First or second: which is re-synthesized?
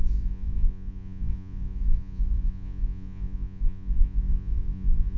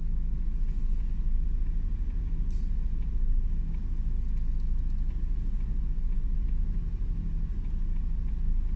first